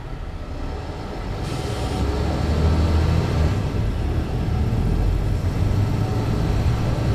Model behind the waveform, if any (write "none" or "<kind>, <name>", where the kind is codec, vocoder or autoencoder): none